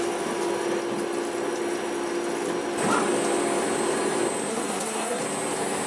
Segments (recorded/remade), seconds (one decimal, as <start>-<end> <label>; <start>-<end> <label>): 0.0-4.5 recorded; 4.5-5.2 remade; 5.2-5.9 recorded